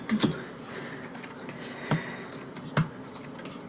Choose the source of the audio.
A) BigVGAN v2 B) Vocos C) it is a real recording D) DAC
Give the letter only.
C